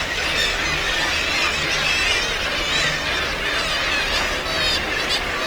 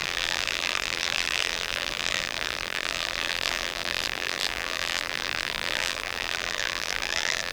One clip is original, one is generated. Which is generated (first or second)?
second